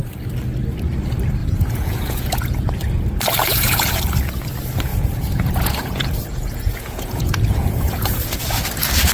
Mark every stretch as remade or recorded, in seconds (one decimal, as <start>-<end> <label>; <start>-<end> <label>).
0.0-1.4 recorded; 1.4-2.7 remade; 2.7-3.4 recorded; 3.4-4.0 remade; 4.0-4.9 recorded; 4.9-8.4 remade; 8.4-9.1 recorded